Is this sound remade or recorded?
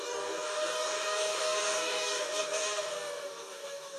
remade